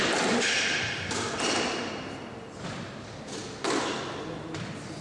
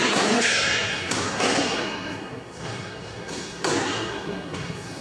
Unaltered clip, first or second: first